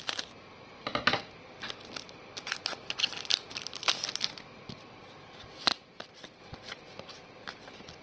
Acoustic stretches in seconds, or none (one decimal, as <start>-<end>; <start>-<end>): 0.0-8.0